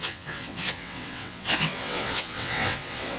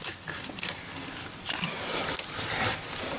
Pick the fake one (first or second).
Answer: first